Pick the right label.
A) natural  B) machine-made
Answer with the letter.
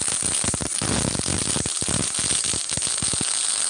A